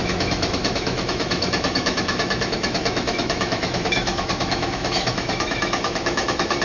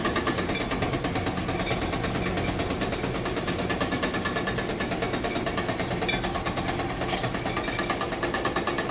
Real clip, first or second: second